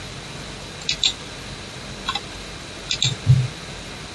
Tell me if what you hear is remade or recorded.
recorded